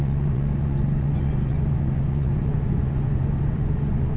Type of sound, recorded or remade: remade